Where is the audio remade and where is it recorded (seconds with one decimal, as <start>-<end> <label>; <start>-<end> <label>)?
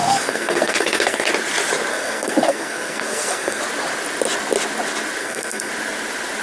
0.0-1.3 remade; 1.3-1.9 recorded; 1.9-3.6 remade; 3.6-5.2 recorded; 5.2-5.7 remade; 5.7-6.4 recorded